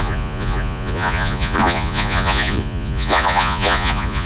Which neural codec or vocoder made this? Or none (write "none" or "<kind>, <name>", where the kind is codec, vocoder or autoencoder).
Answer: vocoder, Vocos